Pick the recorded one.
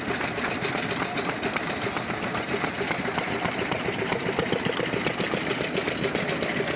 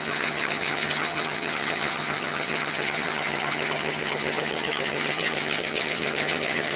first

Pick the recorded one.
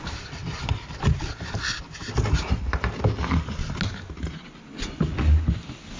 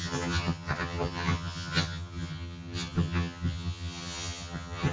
first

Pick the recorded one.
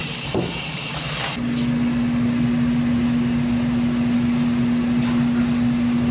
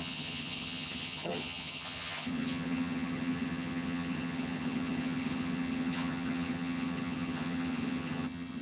first